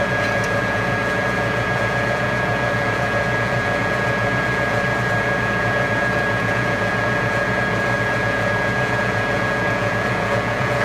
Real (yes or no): no